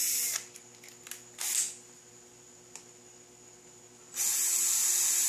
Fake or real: real